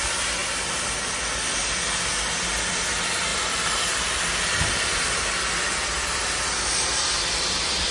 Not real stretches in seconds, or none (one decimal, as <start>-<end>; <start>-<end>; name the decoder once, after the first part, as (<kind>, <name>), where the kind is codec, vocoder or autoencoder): none

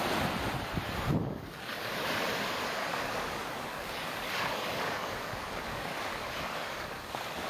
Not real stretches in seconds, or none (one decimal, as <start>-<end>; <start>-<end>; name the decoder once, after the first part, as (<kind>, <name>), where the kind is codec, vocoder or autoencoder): 1.2-1.9 (codec, DAC); 2.8-7.5

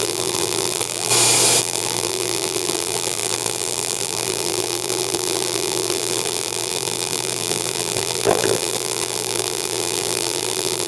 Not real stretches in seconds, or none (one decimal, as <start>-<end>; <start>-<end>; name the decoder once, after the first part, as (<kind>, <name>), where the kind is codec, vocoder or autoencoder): 0.0-1.1 (vocoder, BigVGAN v2); 1.6-10.9

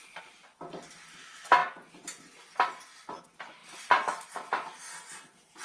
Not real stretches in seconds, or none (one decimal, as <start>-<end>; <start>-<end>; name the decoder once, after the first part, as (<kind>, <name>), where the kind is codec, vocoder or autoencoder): none